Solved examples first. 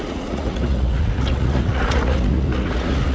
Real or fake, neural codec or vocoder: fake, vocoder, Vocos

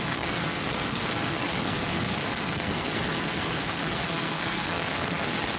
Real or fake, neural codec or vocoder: fake, codec, SNAC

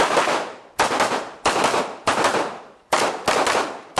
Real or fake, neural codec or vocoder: real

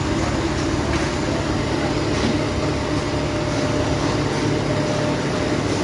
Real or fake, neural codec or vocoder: real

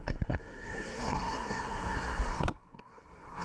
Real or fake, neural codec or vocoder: fake, codec, SNAC